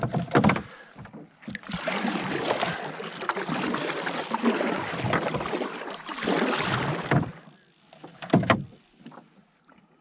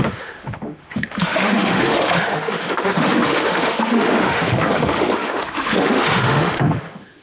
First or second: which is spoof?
second